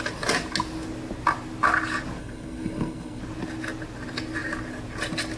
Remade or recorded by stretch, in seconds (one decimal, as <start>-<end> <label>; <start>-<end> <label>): 0.0-2.2 recorded; 2.2-3.2 remade; 3.2-5.4 recorded